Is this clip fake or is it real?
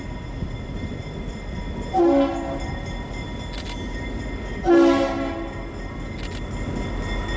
real